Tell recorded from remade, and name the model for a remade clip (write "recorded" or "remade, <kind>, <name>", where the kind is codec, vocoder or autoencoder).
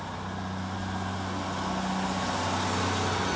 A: recorded